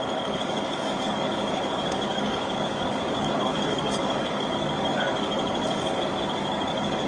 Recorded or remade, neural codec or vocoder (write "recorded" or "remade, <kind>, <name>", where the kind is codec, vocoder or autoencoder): remade, codec, DAC